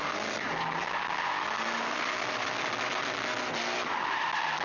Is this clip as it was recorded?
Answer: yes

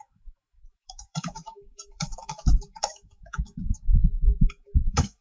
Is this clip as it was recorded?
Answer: no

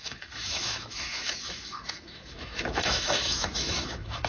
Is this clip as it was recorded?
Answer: no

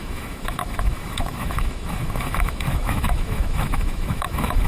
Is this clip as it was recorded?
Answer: no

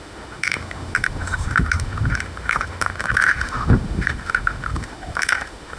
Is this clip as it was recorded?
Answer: no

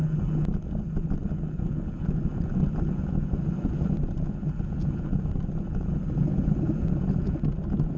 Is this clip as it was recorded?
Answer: yes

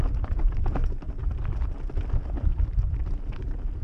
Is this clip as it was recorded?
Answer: yes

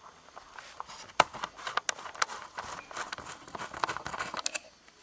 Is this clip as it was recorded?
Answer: yes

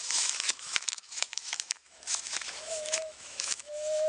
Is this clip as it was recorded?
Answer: no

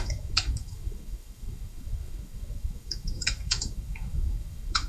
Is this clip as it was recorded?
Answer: no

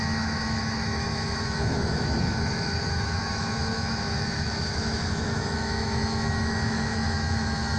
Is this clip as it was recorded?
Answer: no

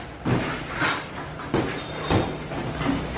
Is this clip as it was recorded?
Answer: yes